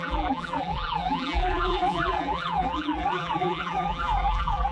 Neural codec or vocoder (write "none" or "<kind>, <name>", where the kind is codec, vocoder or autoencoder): vocoder, BigVGAN v2